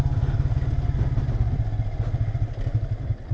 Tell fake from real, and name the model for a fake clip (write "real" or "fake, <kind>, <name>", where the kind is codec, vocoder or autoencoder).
real